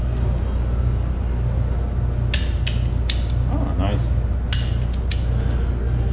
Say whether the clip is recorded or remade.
recorded